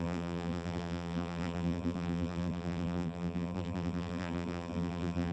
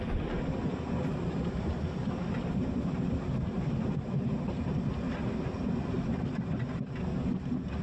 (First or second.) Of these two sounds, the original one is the second